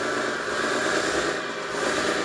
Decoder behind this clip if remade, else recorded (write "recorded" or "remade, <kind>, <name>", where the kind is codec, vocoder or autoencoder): recorded